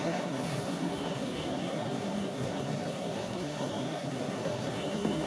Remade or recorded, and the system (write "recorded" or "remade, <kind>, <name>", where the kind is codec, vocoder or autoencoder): remade, codec, SNAC